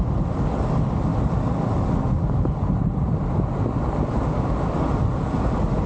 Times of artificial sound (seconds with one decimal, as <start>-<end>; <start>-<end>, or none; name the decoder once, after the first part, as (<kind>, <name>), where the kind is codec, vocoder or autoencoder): none